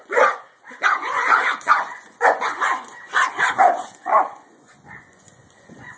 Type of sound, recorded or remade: remade